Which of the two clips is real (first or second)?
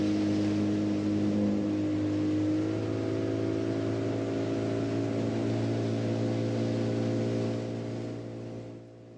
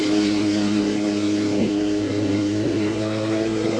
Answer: first